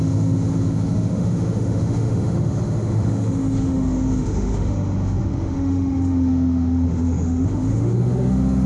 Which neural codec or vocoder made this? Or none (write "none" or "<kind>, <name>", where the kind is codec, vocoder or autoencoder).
autoencoder, DAC-VAE